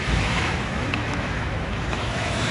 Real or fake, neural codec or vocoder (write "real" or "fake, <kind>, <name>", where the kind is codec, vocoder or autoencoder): fake, autoencoder, DAC-VAE